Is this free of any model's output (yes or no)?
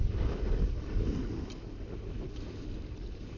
yes